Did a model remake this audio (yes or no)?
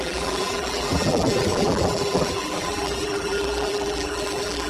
yes